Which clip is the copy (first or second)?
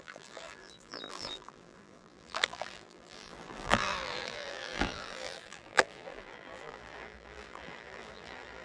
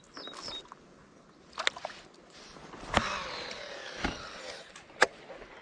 first